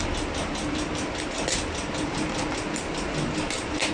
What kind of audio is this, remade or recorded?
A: recorded